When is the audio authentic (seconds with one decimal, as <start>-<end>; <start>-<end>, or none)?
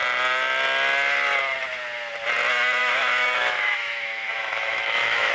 0.0-2.8